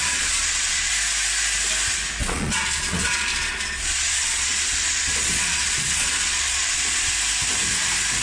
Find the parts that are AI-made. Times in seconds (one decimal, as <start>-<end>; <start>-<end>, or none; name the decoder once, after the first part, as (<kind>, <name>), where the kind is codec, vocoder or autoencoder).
0.0-0.9 (vocoder, Vocos); 2.2-7.1